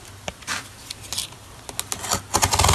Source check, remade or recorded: recorded